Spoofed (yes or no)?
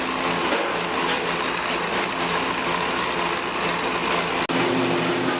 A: no